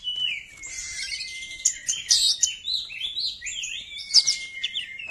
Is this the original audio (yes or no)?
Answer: no